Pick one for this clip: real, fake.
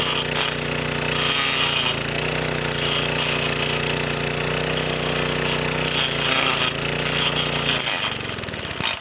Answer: real